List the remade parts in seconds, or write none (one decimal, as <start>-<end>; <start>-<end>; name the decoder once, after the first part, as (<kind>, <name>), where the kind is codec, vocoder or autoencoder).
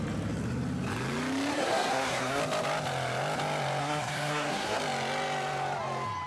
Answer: 1.5-2.4 (codec, SNAC); 3.8-4.8